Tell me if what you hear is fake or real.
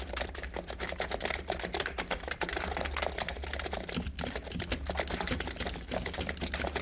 real